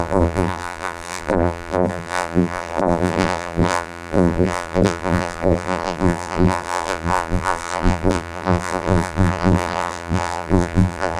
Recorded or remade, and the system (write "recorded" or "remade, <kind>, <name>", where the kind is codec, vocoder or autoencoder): remade, vocoder, BigVGAN v2